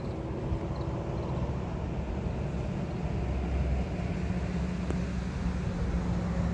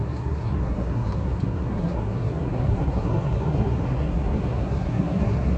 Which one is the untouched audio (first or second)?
first